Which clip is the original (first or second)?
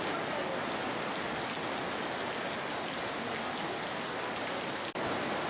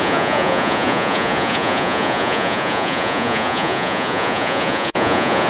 first